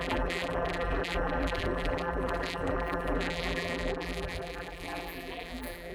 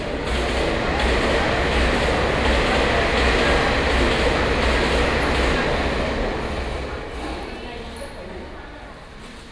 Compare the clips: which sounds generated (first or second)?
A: first